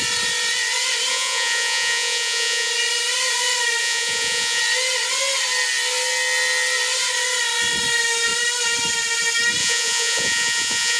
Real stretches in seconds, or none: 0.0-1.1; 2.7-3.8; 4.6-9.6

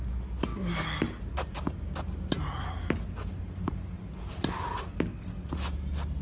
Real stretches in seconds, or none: 0.0-6.2

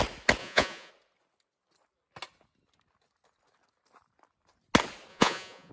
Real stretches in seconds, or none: 0.0-0.4; 0.9-5.1

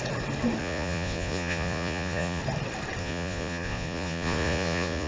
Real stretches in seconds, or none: 0.0-0.6; 2.4-3.0

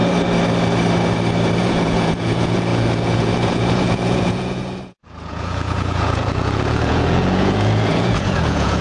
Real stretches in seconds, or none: 0.0-1.6

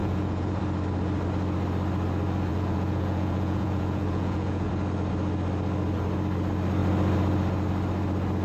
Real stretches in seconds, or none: 0.6-2.5; 4.7-8.4